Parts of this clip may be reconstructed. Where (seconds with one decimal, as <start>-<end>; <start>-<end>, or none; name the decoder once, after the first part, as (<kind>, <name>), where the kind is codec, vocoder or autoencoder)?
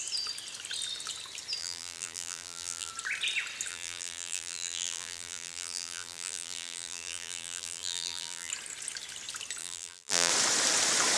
1.6-2.9 (vocoder, BigVGAN v2); 3.7-8.5; 9.6-10.3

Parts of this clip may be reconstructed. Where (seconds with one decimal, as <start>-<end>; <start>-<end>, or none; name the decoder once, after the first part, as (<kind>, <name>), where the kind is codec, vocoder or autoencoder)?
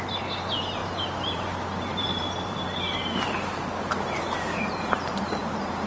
0.8-1.4 (vocoder, BigVGAN v2); 1.9-5.4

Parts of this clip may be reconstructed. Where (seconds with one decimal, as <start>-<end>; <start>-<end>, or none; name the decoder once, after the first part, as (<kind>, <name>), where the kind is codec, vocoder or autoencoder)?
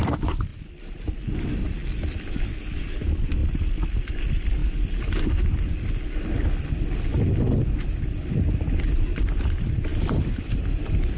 9.9-11.2 (vocoder, BigVGAN v2)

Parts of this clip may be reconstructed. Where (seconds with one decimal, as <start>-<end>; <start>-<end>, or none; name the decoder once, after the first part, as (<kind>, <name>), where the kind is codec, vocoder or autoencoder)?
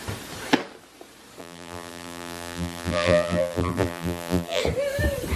1.4-4.6 (vocoder, BigVGAN v2)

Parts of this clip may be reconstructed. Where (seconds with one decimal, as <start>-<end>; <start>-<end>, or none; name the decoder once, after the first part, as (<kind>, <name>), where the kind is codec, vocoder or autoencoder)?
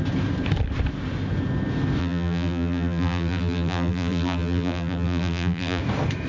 2.0-5.8 (vocoder, BigVGAN v2)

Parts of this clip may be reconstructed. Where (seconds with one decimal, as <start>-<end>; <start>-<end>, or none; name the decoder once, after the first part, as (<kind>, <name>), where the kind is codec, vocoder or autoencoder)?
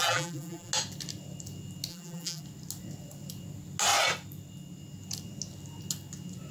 0.0-0.7 (vocoder, BigVGAN v2); 1.9-2.4